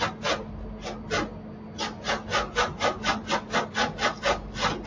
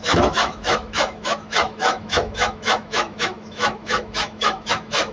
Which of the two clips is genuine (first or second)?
first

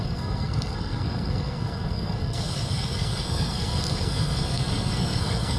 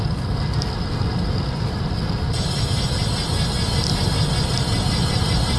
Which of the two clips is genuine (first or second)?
second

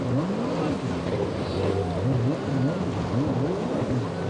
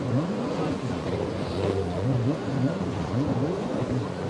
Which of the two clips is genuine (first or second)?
first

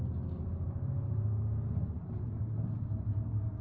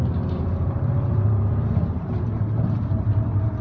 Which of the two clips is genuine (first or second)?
first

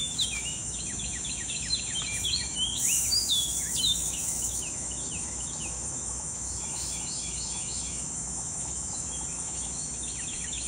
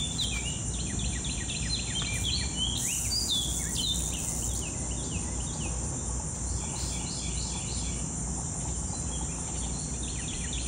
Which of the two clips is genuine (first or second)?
second